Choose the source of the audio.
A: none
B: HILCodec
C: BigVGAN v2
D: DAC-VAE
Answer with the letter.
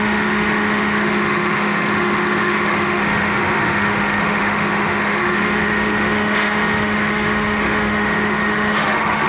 D